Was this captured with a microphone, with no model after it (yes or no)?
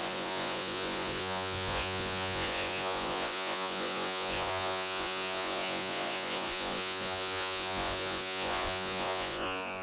no